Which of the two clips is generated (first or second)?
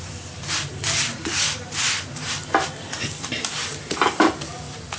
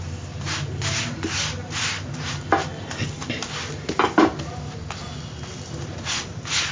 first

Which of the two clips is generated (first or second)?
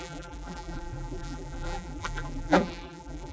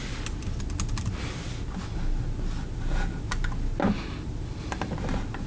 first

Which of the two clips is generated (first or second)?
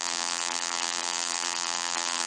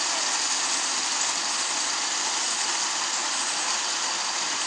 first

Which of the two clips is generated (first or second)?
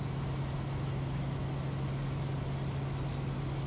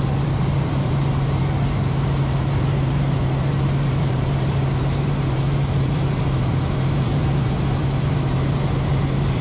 second